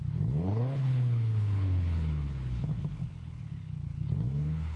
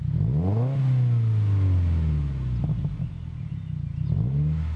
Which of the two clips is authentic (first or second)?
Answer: second